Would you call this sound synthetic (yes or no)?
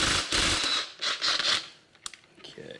no